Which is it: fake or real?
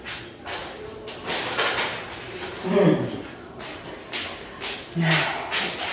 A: real